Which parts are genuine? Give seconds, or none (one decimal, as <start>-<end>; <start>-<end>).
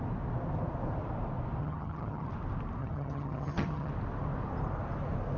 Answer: 0.0-1.6; 2.3-2.8; 3.9-5.4